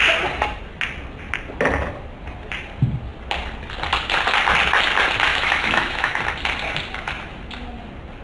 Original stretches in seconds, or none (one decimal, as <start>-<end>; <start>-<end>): 0.0-5.3; 6.2-8.2